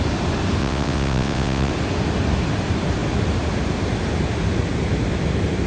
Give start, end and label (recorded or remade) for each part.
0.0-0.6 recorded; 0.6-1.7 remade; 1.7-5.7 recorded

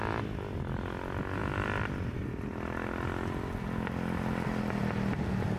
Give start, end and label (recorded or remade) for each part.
0.0-5.6 recorded

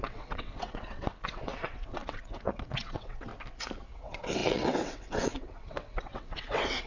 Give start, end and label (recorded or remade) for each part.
0.0-3.3 remade; 3.3-4.0 recorded; 4.0-6.9 remade

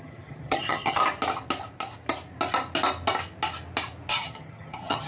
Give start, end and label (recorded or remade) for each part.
0.0-1.0 remade; 1.0-4.1 recorded; 4.1-5.1 remade